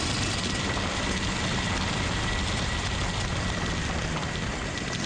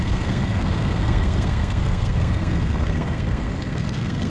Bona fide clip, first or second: first